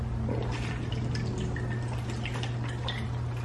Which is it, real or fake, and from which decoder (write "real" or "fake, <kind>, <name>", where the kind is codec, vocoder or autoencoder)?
real